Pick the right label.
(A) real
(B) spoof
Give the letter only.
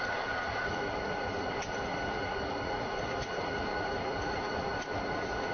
B